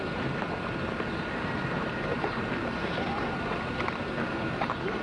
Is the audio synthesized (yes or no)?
yes